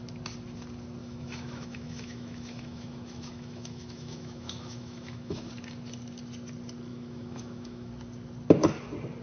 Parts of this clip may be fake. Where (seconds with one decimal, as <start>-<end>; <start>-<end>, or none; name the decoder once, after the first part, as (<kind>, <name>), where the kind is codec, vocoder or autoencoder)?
1.0-5.5 (autoencoder, DAC-VAE); 6.9-7.9